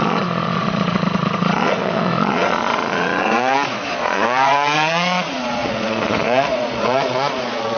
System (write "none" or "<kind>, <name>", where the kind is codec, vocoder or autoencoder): vocoder, Vocos